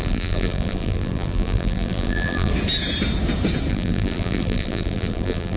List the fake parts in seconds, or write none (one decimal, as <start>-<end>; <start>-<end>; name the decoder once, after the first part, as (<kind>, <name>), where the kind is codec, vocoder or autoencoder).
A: 0.0-2.5 (vocoder, BigVGAN v2); 3.7-5.6